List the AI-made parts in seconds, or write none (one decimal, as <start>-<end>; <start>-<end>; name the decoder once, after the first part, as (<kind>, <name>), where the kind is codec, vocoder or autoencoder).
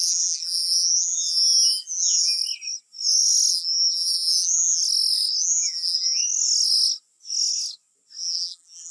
0.0-2.4 (vocoder, BigVGAN v2); 3.5-4.8; 5.4-6.2; 8.2-8.9